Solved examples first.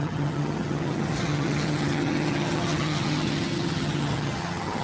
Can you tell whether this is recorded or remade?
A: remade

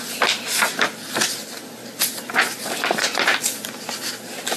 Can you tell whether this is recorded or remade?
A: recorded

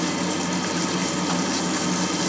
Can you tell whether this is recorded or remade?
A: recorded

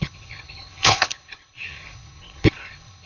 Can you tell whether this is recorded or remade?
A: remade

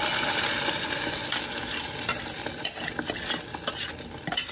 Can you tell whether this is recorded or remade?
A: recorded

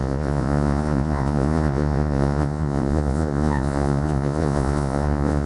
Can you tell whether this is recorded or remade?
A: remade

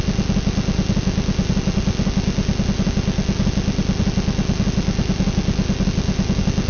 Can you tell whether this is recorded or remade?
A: recorded